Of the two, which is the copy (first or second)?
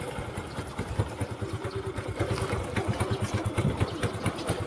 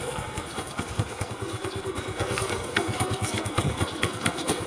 second